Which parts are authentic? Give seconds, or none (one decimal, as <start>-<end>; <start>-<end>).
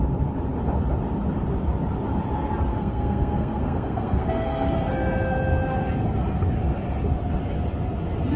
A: 0.0-2.7; 4.7-8.4